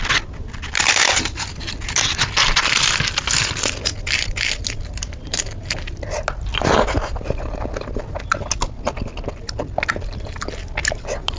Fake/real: real